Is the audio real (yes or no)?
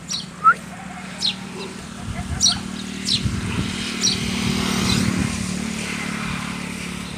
yes